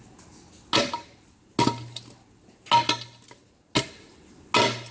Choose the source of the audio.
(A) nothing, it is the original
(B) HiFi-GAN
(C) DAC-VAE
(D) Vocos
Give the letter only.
A